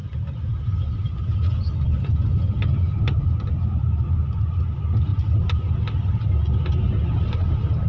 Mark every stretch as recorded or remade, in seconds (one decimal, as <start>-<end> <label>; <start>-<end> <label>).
0.0-7.9 recorded